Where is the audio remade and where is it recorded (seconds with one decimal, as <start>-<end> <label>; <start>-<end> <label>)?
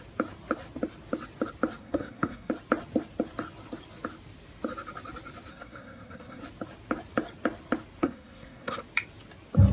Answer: 0.0-1.8 recorded; 1.8-2.5 remade; 2.5-5.5 recorded; 5.5-6.4 remade; 6.4-8.0 recorded; 8.0-8.8 remade; 8.8-9.7 recorded